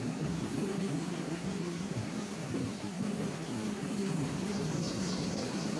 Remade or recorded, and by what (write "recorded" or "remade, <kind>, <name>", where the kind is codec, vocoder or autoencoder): remade, codec, SNAC